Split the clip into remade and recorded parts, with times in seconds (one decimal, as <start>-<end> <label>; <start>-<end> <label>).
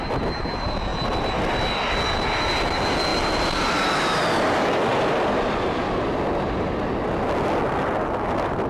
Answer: 0.0-8.7 recorded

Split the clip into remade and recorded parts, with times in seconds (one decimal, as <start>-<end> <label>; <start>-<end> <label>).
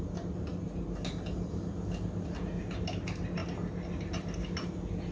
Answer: 0.0-5.1 recorded